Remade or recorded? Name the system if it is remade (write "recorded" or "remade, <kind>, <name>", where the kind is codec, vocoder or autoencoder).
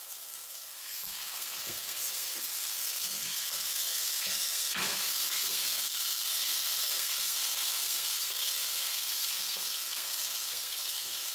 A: remade, codec, SNAC